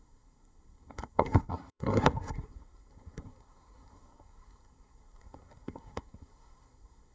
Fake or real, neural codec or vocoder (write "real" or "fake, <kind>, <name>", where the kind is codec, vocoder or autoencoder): fake, codec, SNAC